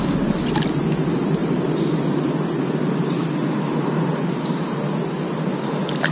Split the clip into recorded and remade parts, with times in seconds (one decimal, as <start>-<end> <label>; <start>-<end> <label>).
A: 0.0-6.1 recorded